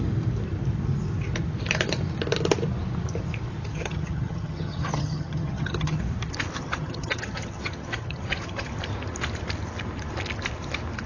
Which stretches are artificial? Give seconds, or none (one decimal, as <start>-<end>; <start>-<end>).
3.7-6.0; 6.5-8.7